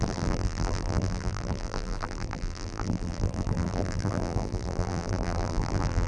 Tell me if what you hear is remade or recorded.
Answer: remade